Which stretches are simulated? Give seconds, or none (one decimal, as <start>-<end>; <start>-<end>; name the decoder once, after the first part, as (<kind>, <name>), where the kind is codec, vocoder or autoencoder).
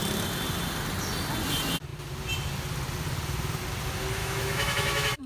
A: 4.2-5.3 (autoencoder, DAC-VAE)